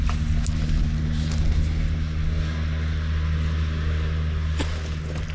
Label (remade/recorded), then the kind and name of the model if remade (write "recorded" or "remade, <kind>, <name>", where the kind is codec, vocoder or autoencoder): recorded